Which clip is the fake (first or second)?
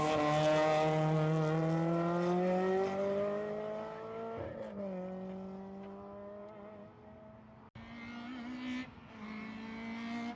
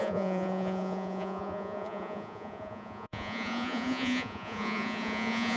second